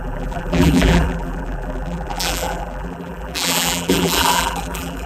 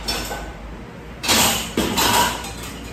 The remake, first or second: first